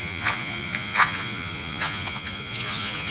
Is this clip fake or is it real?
fake